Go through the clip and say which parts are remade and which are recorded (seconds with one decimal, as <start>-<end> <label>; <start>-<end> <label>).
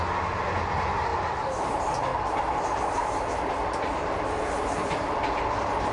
0.0-5.9 recorded